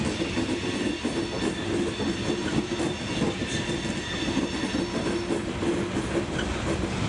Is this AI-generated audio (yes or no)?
no